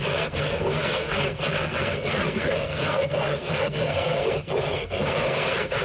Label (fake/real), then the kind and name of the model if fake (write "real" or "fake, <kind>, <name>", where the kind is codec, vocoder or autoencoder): fake, codec, SNAC